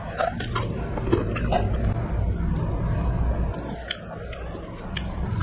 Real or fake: real